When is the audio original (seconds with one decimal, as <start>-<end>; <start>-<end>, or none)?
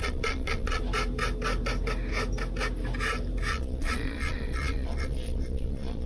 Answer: 0.8-3.5